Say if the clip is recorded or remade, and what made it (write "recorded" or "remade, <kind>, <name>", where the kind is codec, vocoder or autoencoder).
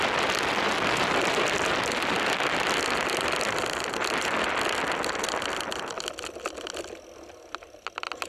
recorded